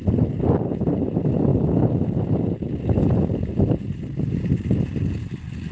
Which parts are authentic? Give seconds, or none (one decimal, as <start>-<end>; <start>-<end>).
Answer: 0.0-5.7